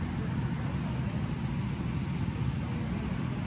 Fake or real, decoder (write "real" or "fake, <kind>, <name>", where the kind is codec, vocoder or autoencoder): real